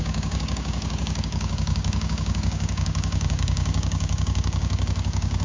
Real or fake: fake